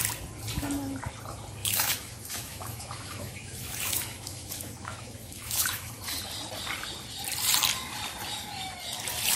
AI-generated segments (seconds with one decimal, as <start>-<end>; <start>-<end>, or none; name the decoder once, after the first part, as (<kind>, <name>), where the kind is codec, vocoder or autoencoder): 1.6-5.9 (autoencoder, DAC-VAE)